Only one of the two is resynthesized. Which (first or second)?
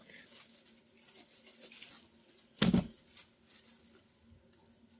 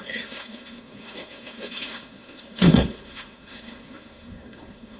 second